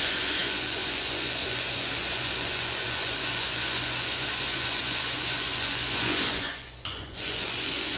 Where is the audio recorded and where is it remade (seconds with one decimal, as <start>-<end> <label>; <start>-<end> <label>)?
0.0-8.0 remade